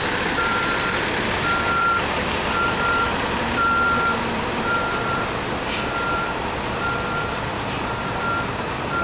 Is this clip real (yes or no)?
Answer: no